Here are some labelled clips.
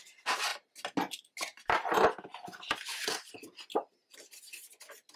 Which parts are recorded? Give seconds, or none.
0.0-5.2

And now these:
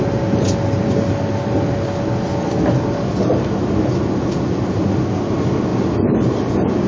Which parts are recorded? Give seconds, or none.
0.0-6.9

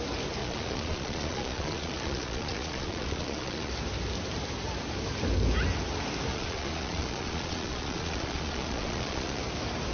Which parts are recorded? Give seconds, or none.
0.0-0.4; 3.7-6.3; 9.4-9.9

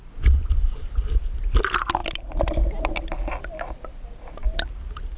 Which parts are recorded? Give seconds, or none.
0.0-5.2